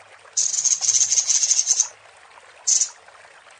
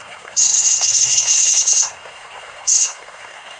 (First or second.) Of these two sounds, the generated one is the second